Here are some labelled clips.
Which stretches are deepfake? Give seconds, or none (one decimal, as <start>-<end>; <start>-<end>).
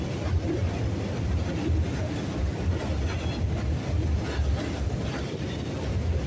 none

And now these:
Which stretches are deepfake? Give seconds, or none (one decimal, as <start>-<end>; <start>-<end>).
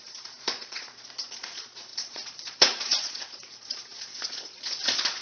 0.0-5.2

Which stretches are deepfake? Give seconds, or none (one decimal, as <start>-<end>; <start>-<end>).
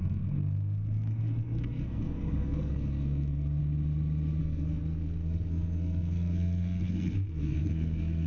0.0-3.6; 4.4-8.3